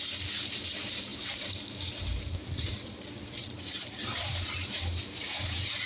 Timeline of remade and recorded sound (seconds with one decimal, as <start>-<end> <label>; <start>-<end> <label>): 0.0-5.9 remade